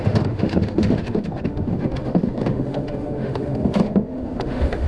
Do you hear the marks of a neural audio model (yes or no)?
yes